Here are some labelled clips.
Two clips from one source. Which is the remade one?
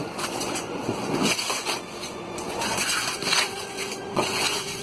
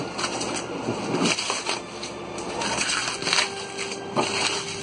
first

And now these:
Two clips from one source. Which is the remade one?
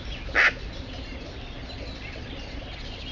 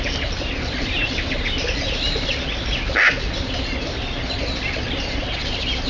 second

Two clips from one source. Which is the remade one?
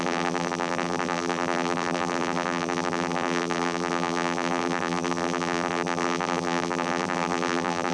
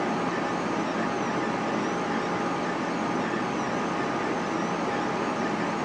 first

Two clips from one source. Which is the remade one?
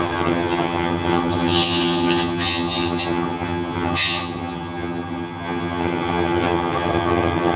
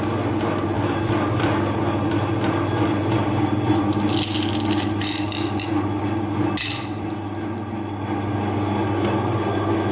first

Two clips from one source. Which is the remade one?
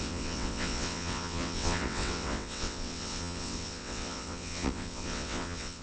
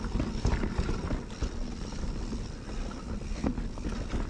first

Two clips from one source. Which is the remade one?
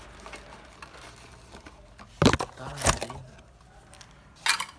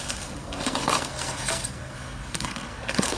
second